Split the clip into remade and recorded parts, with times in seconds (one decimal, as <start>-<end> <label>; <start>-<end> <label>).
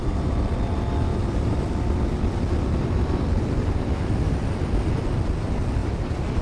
0.0-1.1 recorded; 1.1-4.9 remade; 4.9-5.8 recorded; 5.8-6.4 remade